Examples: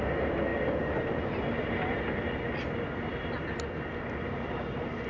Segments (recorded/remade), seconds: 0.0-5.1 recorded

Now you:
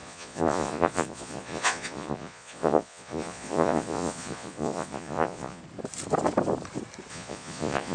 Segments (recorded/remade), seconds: 0.0-5.6 remade; 5.6-7.1 recorded; 7.1-7.9 remade

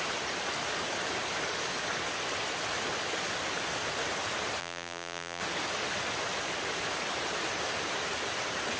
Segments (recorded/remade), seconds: 0.0-4.6 recorded; 4.6-5.4 remade; 5.4-8.8 recorded

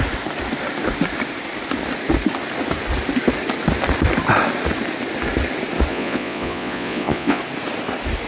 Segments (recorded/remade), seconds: 0.0-5.9 recorded; 5.9-7.4 remade; 7.4-8.3 recorded

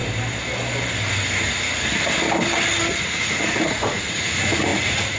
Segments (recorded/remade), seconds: 0.0-3.1 recorded; 3.1-5.2 remade

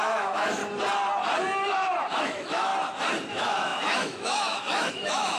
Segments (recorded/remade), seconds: 0.0-0.6 remade; 0.6-2.2 recorded; 2.2-2.7 remade; 2.7-3.3 recorded; 3.3-5.4 remade

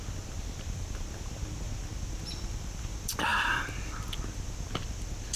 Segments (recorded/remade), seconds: 0.0-5.4 recorded

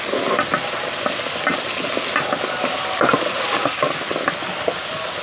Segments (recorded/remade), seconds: 0.0-5.2 recorded